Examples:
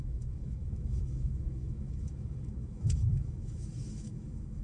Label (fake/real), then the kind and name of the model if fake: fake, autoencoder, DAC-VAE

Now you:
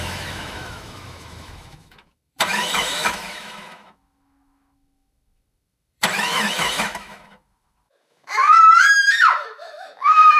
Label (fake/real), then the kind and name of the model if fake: fake, autoencoder, DAC-VAE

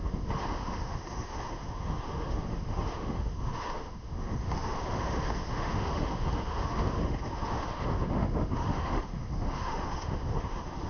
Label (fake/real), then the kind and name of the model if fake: fake, autoencoder, DAC-VAE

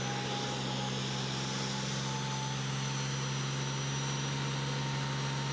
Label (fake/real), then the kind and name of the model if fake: real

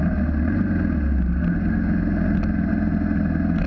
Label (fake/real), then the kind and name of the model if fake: real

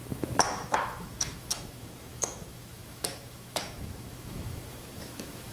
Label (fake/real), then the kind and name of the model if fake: fake, autoencoder, DAC-VAE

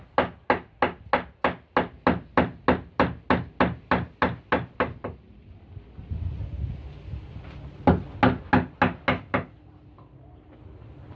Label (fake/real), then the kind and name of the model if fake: real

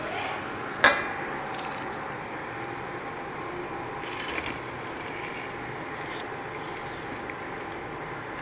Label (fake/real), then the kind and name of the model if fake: real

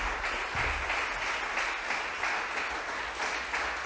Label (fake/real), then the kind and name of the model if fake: real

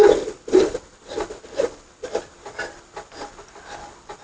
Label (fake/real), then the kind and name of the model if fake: real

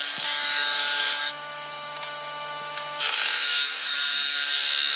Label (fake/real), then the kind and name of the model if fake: fake, autoencoder, DAC-VAE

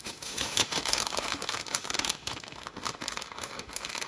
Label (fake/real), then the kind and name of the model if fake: fake, autoencoder, DAC-VAE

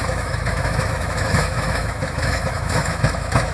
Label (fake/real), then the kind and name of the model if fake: fake, autoencoder, DAC-VAE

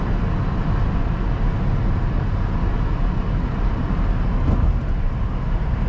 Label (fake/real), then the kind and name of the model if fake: real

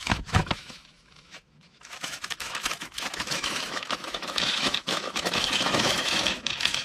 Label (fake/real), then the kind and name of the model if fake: fake, autoencoder, DAC-VAE